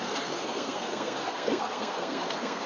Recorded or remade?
remade